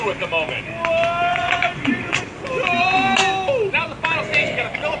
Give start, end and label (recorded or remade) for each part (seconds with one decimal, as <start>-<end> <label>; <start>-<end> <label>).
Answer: 0.0-1.3 recorded; 1.3-2.2 remade; 2.2-5.0 recorded